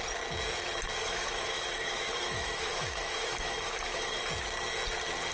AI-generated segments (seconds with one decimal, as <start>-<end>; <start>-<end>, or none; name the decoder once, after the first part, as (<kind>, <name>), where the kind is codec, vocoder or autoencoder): 1.0-4.2 (autoencoder, DAC-VAE)